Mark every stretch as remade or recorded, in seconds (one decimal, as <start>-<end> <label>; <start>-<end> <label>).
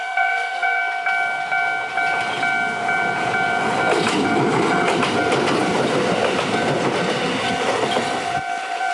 0.0-0.8 remade; 0.8-8.9 recorded